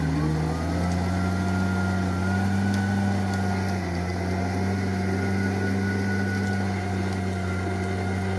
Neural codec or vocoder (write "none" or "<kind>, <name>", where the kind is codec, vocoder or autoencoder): none